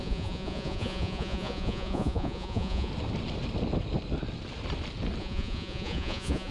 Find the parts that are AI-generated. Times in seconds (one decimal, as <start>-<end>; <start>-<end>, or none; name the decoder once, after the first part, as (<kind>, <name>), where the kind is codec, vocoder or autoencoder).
0.0-2.9 (vocoder, Vocos); 5.2-6.5